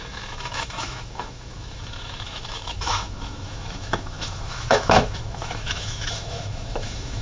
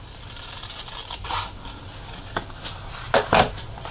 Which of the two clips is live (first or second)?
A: second